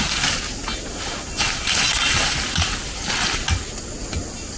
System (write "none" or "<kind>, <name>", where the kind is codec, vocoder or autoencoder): none